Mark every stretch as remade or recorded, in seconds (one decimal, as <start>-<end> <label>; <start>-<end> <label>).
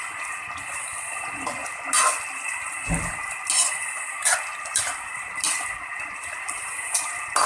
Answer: 0.0-7.5 recorded